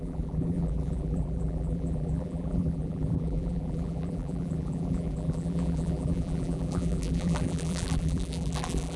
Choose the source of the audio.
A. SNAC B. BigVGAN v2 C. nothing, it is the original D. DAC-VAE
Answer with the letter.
B